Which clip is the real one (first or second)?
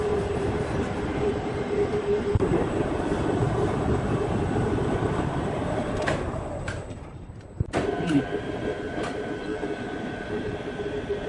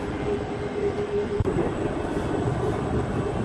second